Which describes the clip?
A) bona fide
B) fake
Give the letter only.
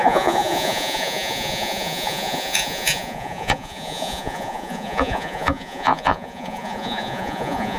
B